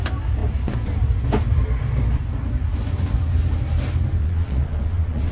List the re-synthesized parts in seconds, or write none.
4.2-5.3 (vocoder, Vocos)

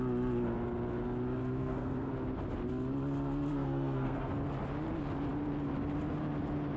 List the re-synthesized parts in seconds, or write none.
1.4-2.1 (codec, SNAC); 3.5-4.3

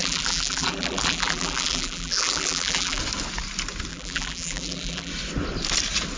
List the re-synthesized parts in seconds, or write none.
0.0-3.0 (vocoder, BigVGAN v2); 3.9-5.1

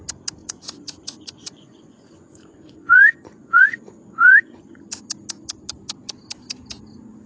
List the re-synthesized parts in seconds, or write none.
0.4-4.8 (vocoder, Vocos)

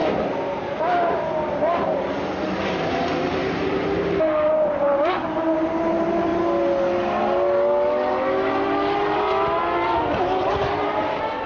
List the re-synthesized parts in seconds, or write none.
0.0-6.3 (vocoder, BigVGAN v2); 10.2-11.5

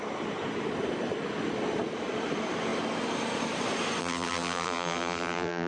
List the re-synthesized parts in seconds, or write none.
4.0-5.7 (vocoder, BigVGAN v2)